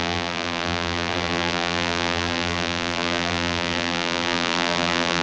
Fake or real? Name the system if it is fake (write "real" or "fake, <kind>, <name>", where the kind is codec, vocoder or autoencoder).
fake, vocoder, BigVGAN v2